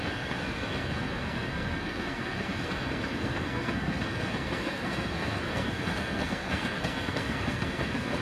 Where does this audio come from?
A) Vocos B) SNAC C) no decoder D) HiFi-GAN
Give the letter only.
B